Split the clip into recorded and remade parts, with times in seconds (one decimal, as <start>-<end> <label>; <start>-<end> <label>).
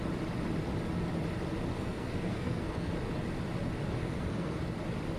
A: 0.0-1.7 recorded; 1.7-2.9 remade; 2.9-4.0 recorded; 4.0-4.6 remade; 4.6-5.2 recorded